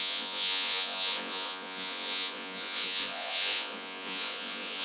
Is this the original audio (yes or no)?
no